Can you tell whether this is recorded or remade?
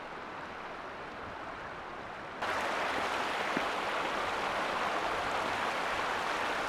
recorded